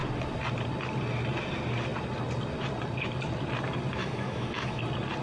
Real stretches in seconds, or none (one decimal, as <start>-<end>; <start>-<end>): 0.0-4.0; 4.8-5.2